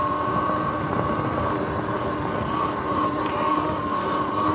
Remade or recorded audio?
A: recorded